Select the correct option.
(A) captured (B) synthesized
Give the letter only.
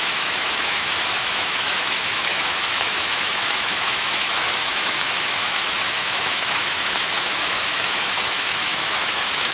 B